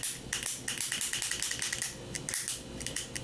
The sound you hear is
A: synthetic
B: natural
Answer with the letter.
B